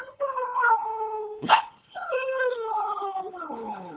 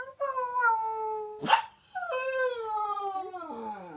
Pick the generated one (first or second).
first